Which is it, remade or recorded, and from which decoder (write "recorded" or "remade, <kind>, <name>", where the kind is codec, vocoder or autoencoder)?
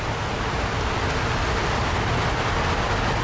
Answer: recorded